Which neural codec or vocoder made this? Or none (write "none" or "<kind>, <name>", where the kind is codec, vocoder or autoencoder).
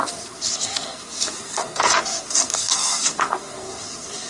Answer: codec, SNAC